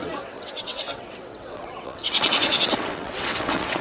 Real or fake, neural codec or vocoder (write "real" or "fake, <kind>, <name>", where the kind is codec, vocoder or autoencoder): fake, vocoder, WaveNeXt